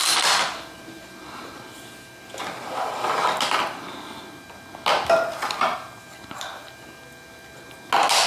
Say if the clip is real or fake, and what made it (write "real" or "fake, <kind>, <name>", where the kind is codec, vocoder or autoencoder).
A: real